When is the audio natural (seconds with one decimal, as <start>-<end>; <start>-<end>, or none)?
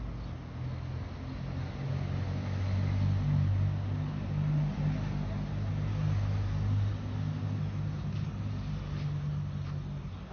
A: 0.0-10.3